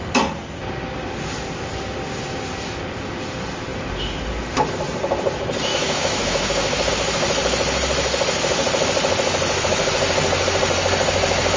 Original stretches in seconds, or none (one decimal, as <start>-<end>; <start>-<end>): 0.0-5.7; 6.9-11.6